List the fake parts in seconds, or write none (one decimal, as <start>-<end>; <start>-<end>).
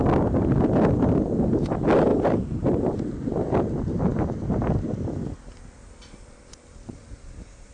2.1-2.9